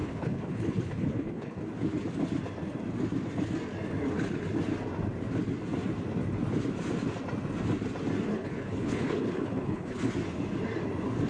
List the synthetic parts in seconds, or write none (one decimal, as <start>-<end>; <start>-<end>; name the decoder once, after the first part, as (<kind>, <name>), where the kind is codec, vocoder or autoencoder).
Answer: 0.0-1.6 (codec, HILCodec); 8.3-10.1